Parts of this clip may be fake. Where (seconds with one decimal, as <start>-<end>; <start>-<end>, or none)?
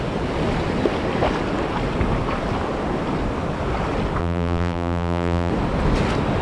4.2-5.5